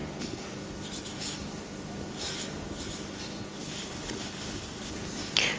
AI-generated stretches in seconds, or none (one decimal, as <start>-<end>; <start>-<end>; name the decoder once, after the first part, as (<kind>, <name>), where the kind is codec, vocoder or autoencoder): 3.6-4.9 (codec, HILCodec)